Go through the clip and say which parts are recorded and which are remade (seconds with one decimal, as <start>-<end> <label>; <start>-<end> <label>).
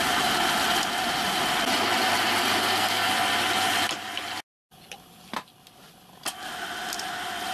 0.0-2.6 recorded; 2.6-3.1 remade; 3.1-7.5 recorded